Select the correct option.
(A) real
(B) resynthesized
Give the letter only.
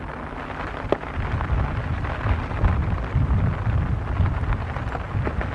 A